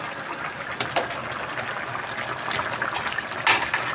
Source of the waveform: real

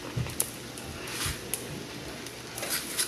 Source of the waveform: real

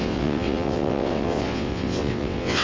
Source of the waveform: fake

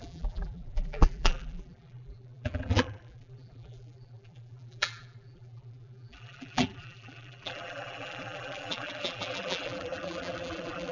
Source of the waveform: fake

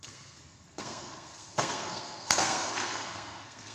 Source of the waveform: fake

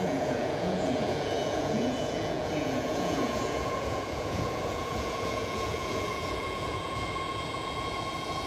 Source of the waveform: fake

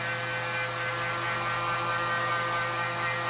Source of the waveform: real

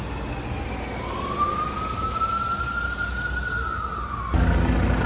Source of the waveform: real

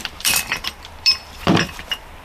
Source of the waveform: fake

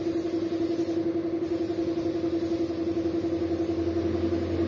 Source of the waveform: real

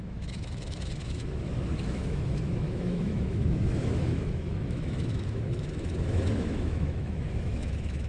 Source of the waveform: fake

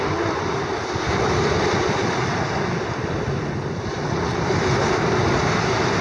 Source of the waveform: real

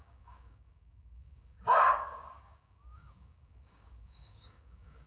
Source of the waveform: fake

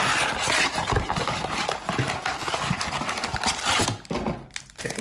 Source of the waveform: real